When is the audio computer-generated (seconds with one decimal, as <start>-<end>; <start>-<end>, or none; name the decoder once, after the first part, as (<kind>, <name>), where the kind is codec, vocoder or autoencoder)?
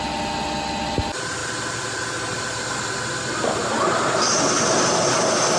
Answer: none